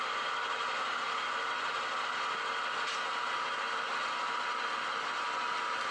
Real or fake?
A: real